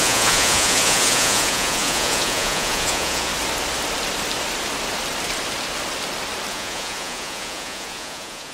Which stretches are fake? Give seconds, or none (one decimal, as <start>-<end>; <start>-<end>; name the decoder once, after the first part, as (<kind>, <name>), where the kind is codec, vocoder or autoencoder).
0.0-3.3 (vocoder, Vocos); 6.5-8.5